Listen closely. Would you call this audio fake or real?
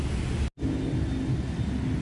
real